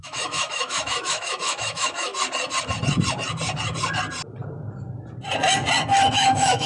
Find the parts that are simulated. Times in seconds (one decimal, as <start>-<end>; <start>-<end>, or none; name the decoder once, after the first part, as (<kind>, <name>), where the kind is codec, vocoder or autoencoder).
0.0-2.1 (autoencoder, DAC-VAE); 6.1-6.7